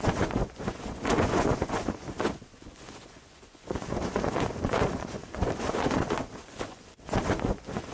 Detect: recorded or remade remade